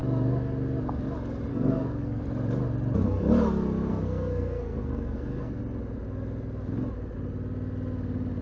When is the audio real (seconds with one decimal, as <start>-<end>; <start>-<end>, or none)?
0.0-1.5; 2.2-3.9; 5.6-8.4